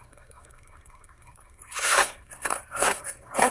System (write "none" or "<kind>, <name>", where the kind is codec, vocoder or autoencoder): codec, SNAC